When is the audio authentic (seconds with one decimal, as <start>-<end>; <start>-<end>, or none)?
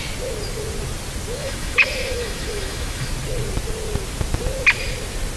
0.0-1.4; 3.1-5.4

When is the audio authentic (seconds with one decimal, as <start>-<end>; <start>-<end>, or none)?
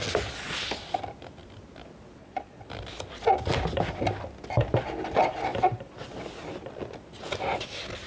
0.0-2.2; 2.7-8.1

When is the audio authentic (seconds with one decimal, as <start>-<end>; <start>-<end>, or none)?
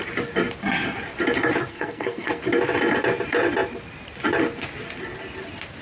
0.0-1.7; 2.4-5.8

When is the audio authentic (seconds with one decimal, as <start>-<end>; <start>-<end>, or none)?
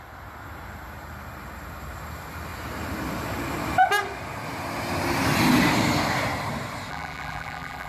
0.0-6.9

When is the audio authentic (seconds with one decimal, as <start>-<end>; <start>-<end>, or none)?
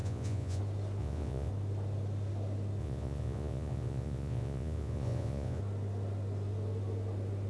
0.6-1.0; 1.5-2.8; 5.6-7.5